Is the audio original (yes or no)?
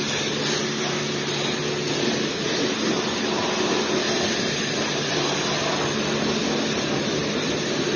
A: yes